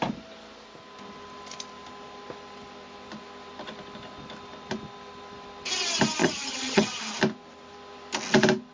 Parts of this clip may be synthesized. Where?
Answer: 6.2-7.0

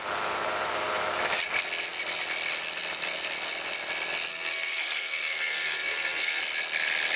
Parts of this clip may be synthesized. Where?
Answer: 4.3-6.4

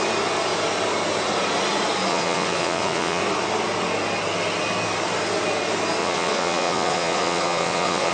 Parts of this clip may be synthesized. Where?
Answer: 2.1-3.2; 6.0-8.1

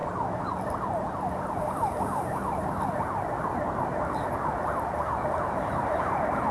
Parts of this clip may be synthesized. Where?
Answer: none

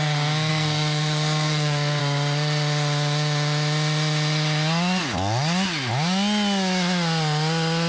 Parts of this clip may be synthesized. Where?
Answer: 0.5-2.0